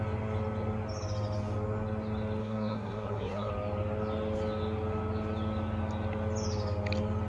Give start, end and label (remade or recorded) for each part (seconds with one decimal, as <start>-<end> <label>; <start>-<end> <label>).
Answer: 0.0-2.4 recorded; 2.4-3.5 remade; 3.5-7.3 recorded